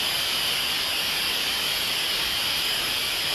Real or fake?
fake